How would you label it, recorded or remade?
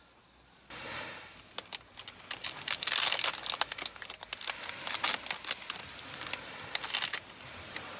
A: recorded